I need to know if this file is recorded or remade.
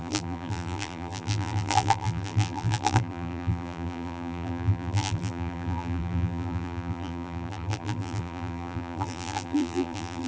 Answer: remade